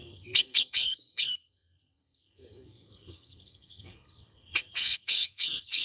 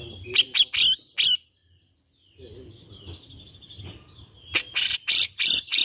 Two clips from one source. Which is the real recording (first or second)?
second